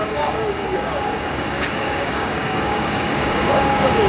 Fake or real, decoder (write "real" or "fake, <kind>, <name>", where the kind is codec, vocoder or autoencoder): fake, codec, DAC